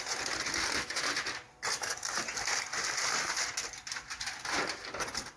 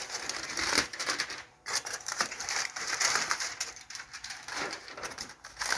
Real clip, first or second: first